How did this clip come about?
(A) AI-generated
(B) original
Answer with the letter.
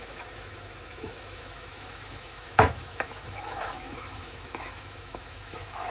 A